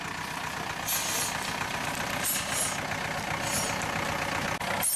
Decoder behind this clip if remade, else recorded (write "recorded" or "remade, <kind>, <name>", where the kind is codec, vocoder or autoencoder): recorded